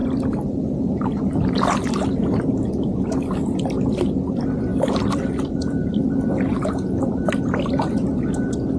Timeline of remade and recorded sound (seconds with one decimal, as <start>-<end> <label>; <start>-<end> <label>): 0.0-2.5 remade; 2.5-4.7 recorded; 4.7-6.7 remade; 6.7-8.8 recorded

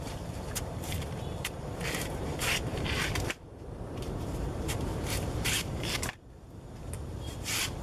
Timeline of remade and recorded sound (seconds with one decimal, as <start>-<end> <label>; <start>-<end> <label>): 0.0-7.8 remade

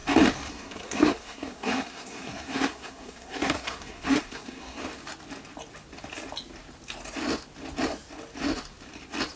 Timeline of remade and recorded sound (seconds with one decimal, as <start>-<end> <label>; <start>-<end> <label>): 0.0-0.5 recorded; 0.5-4.8 remade; 4.8-9.4 recorded

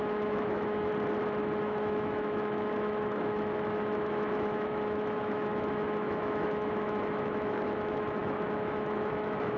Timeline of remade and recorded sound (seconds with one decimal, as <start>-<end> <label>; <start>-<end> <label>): 0.0-0.9 remade; 0.9-1.6 recorded; 1.6-9.6 remade

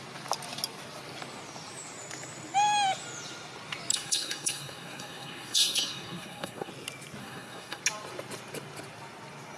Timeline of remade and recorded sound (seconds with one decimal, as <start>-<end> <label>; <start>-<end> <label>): 0.0-3.9 recorded; 3.9-6.7 remade; 6.7-7.2 recorded; 7.2-7.8 remade; 7.8-9.6 recorded